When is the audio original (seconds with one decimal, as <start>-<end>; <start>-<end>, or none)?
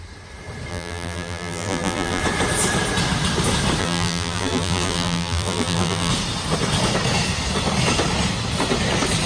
0.0-0.7; 2.2-3.8; 6.1-9.3